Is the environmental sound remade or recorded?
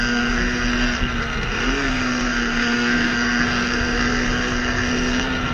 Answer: remade